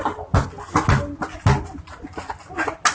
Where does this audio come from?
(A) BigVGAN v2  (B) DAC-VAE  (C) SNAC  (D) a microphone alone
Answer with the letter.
D